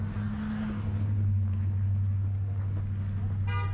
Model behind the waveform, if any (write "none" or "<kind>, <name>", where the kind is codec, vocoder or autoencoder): none